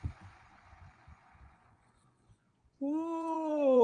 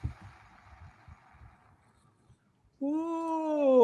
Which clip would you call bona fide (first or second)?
second